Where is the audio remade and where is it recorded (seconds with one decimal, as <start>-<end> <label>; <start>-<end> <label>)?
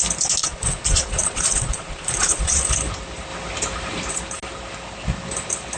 0.0-0.4 recorded; 0.4-2.7 remade; 2.7-5.8 recorded